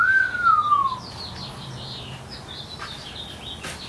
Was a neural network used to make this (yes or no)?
no